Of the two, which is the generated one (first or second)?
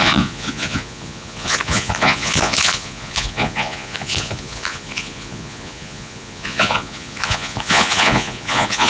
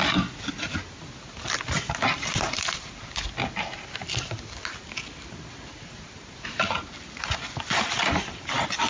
first